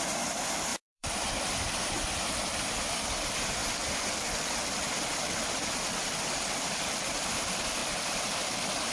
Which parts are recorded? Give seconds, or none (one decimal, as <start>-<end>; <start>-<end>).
3.6-6.6; 7.8-8.9